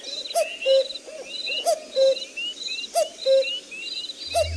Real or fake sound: real